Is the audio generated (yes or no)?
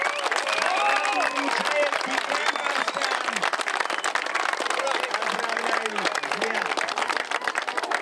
no